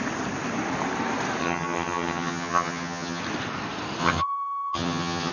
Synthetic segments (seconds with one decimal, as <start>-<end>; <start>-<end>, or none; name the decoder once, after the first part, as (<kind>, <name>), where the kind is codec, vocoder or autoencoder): 1.4-3.2 (vocoder, HiFi-GAN); 4.0-5.3